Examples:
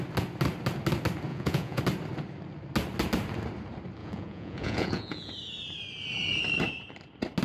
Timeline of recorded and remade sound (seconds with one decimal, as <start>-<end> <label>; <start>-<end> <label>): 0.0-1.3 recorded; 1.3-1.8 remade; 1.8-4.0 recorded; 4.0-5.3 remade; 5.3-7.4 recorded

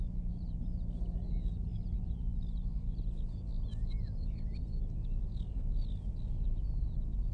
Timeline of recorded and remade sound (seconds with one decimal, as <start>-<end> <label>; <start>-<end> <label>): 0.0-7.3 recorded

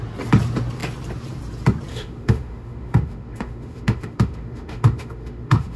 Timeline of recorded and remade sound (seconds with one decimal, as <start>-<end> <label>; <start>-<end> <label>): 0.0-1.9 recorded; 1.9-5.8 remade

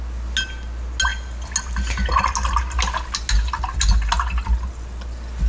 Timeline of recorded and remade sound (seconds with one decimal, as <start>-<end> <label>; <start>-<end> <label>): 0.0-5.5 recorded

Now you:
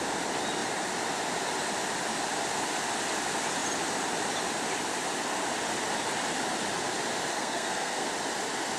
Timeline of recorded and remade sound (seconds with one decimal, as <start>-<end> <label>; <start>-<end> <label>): 0.0-7.3 recorded; 7.3-8.1 remade; 8.1-8.8 recorded